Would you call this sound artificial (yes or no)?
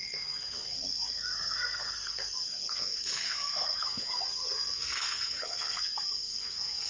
yes